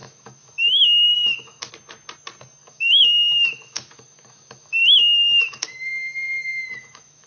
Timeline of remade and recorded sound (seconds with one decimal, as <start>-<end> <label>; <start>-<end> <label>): 0.0-1.7 remade; 1.7-2.6 recorded; 2.6-7.3 remade